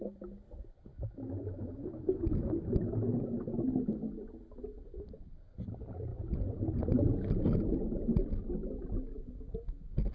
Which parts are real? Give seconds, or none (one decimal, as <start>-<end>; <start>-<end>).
0.0-0.9; 3.7-10.1